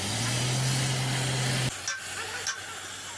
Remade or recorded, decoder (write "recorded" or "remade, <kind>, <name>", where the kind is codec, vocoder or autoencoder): recorded